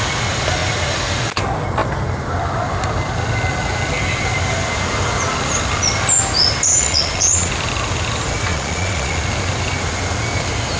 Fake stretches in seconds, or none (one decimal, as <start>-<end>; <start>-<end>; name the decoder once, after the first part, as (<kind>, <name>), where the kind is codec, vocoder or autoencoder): 6.7-7.5 (vocoder, Vocos); 8.5-9.2

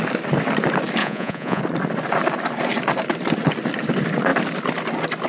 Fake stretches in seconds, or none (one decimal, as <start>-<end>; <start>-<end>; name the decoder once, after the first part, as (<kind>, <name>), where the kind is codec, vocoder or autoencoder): 1.0-1.6 (vocoder, Vocos)